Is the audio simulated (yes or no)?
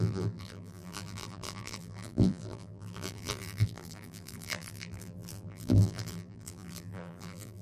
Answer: yes